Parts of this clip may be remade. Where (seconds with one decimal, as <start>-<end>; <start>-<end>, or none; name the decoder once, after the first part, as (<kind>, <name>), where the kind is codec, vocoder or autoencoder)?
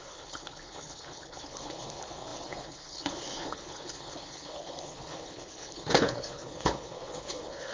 0.0-7.7 (codec, HILCodec)